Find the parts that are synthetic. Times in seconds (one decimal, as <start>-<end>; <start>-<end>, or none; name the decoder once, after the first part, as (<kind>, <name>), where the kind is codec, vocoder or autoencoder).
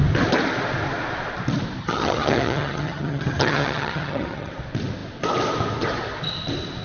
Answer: 1.8-4.5 (vocoder, HiFi-GAN)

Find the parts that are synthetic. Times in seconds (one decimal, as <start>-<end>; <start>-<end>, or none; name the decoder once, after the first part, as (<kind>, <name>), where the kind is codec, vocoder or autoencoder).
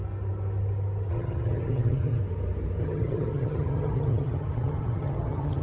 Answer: 1.1-2.2 (vocoder, HiFi-GAN); 2.8-5.6